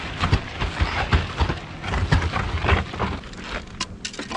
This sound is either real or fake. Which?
real